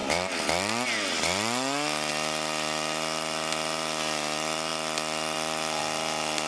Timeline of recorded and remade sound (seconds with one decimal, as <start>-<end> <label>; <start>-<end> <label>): 0.0-6.5 recorded